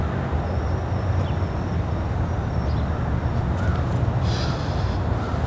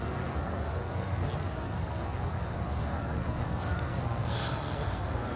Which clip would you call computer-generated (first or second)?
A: second